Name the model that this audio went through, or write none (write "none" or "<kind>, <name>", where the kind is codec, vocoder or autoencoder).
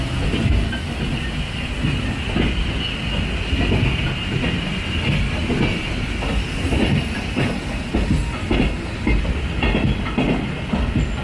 none